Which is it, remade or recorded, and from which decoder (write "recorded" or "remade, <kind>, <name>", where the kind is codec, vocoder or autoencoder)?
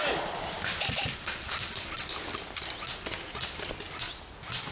recorded